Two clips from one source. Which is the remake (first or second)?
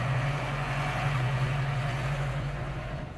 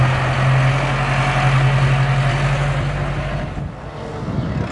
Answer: first